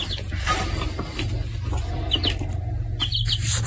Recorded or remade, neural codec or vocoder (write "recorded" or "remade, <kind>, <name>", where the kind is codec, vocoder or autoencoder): recorded